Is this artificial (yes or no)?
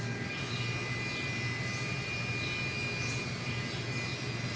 no